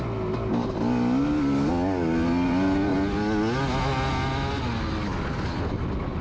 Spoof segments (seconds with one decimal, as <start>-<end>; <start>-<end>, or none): none